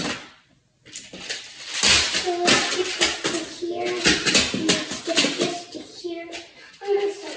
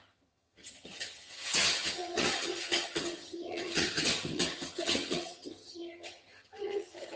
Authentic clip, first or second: first